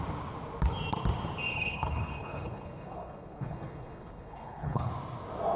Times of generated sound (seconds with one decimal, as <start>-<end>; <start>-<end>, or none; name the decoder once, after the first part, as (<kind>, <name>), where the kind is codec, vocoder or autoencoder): 1.5-4.9 (codec, HILCodec)